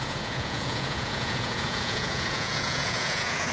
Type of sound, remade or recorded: remade